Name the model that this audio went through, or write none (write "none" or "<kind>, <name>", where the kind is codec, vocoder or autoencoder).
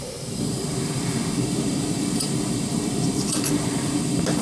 vocoder, BigVGAN v2